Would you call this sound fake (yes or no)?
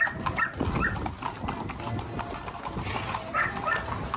no